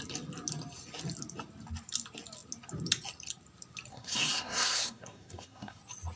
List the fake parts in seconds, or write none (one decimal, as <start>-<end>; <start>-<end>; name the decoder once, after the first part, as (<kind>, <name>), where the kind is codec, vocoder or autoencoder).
3.9-5.8 (codec, SNAC)